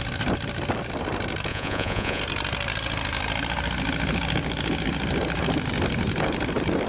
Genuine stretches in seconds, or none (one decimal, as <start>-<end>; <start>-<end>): 0.0-1.5; 2.2-6.9